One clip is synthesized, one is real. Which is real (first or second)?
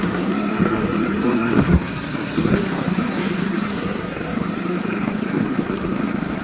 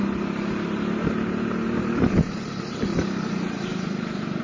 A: second